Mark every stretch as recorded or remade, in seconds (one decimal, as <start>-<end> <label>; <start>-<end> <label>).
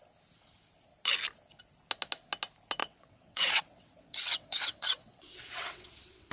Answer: 0.0-2.8 recorded; 2.8-6.3 remade